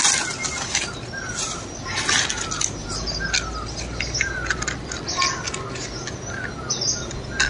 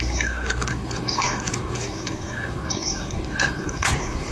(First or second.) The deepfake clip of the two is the second